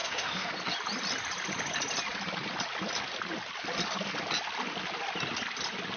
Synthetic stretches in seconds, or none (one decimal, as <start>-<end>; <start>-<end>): 0.0-0.5